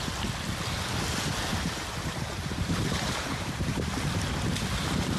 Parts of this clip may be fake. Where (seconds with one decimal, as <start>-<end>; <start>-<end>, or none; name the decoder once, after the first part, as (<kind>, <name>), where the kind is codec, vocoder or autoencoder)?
1.5-3.9 (vocoder, BigVGAN v2)